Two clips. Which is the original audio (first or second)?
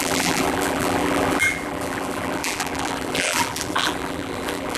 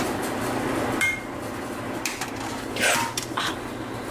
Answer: second